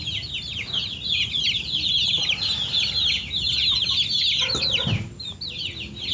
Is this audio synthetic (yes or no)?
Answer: no